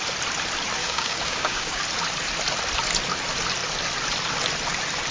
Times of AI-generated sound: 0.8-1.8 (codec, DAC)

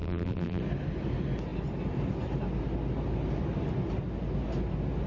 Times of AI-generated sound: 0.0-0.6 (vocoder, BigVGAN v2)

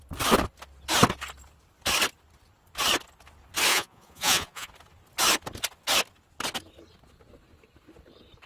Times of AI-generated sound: 3.7-4.7 (vocoder, Vocos)

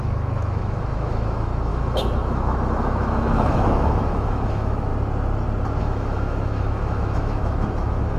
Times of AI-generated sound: 0.0-4.9 (autoencoder, DAC-VAE); 5.8-8.2

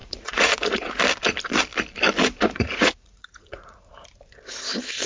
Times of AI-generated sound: 0.0-1.0 (vocoder, Vocos); 2.2-3.9

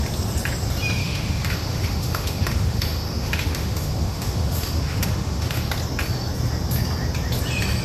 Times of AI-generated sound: 1.0-5.7 (autoencoder, DAC-VAE)

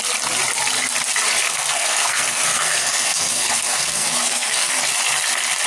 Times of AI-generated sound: 1.4-4.8 (codec, SNAC)

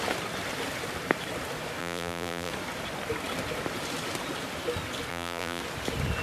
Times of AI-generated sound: 1.8-2.5 (vocoder, BigVGAN v2); 5.1-5.6